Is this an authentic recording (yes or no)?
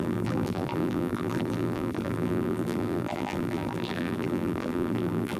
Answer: no